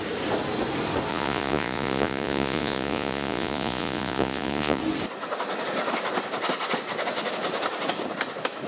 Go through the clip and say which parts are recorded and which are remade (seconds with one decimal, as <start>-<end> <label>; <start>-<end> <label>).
0.0-1.1 recorded; 1.1-4.8 remade; 4.8-8.7 recorded